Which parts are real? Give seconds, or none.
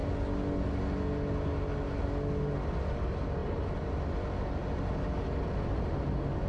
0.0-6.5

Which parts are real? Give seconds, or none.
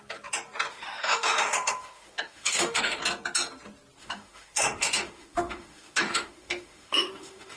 0.0-0.7; 3.0-4.0